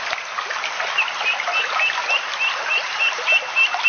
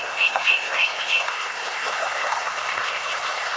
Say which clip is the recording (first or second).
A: first